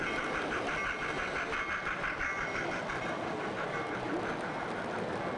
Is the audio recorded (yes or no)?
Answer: yes